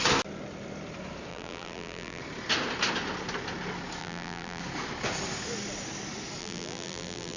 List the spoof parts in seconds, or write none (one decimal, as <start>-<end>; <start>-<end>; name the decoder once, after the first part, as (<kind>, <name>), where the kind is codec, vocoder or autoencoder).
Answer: 1.3-2.2 (vocoder, BigVGAN v2); 4.0-4.6; 6.4-7.4